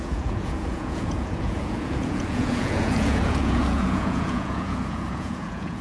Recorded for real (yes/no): no